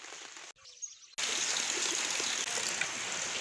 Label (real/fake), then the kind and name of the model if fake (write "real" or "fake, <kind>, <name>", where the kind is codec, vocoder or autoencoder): real